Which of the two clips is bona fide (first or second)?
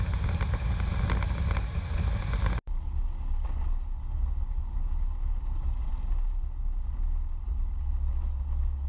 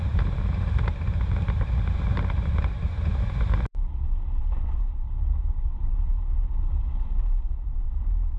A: first